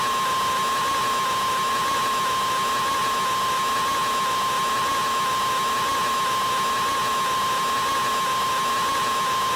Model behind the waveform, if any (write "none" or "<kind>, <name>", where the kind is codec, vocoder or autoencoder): none